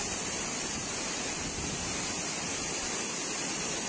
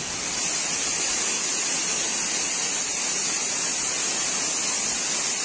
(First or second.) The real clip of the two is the second